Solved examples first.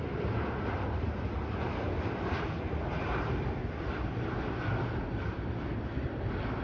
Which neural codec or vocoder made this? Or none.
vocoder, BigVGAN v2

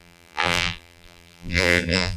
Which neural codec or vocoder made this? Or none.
vocoder, BigVGAN v2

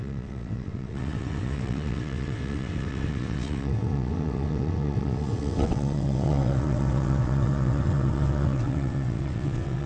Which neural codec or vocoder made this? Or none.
vocoder, WaveNeXt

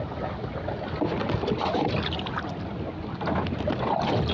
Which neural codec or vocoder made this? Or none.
none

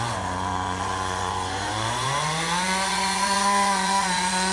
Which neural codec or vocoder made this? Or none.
vocoder, Vocos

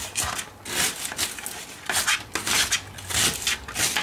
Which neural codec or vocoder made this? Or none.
none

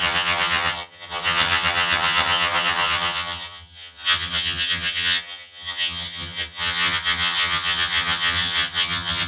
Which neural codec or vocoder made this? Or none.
vocoder, HiFi-GAN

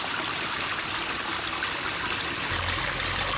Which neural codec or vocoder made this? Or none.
none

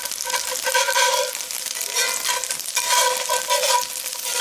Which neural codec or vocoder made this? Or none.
none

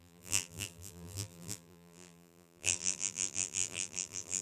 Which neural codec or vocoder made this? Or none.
vocoder, BigVGAN v2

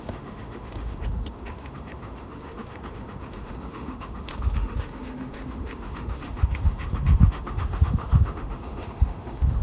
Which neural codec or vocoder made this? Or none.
autoencoder, DAC-VAE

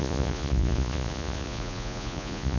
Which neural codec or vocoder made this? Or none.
vocoder, Vocos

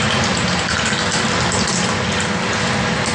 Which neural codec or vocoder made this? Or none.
none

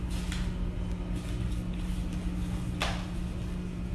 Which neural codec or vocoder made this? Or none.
none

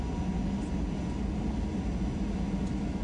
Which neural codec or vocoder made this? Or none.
none